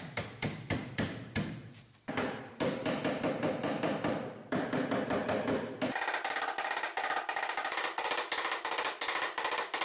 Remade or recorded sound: remade